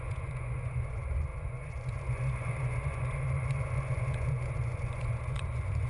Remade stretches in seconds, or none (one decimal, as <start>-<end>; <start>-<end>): 0.0-5.9